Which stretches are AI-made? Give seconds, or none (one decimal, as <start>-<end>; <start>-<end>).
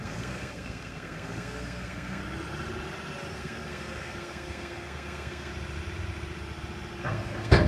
0.0-2.2; 3.3-5.5; 7.0-7.7